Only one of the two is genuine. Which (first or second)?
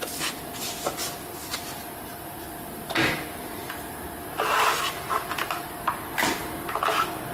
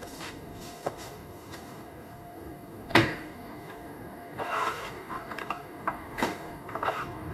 first